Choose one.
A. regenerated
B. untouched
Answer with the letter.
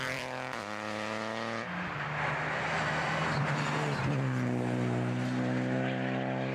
B